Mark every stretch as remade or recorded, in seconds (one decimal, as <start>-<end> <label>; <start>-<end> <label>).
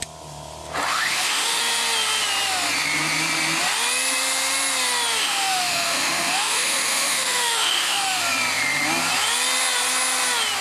0.0-0.9 recorded; 0.9-1.6 remade; 1.6-5.2 recorded; 5.2-8.2 remade; 8.2-10.6 recorded